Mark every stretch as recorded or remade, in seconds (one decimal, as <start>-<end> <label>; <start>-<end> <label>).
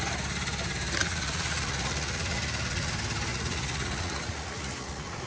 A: 0.0-1.0 recorded; 1.0-2.9 remade; 2.9-3.3 recorded; 3.3-5.3 remade